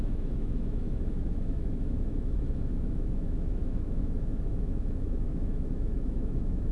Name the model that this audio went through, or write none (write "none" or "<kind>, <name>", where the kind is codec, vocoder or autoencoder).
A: autoencoder, DAC-VAE